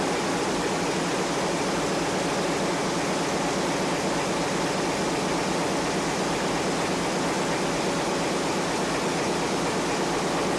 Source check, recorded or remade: recorded